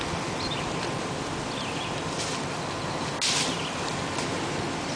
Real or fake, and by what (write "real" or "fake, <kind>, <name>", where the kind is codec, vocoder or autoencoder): real